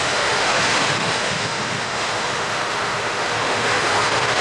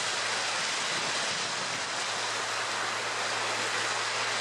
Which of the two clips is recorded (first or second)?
second